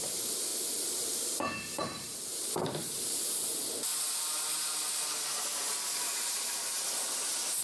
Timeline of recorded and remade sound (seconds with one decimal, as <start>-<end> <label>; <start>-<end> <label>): 0.0-0.5 recorded; 0.5-3.8 remade; 3.8-7.6 recorded

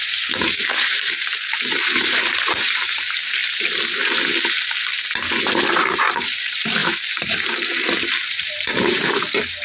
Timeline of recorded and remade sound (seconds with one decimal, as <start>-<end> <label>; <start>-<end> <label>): 0.0-3.4 remade; 3.4-5.8 recorded; 5.8-9.6 remade

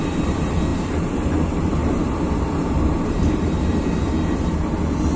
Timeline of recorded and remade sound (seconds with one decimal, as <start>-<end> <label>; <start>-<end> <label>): 0.0-0.7 recorded; 0.7-3.8 remade; 3.8-5.2 recorded